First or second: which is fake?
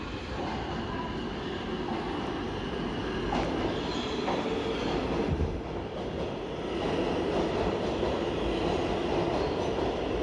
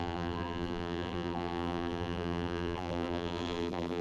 second